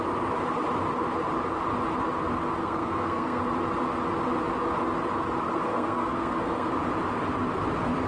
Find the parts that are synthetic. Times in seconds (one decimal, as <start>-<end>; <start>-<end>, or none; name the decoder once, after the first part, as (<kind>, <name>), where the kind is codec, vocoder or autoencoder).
2.6-3.4 (codec, SNAC); 5.6-6.7